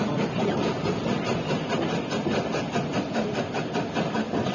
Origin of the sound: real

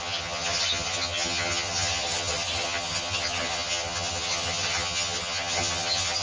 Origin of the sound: fake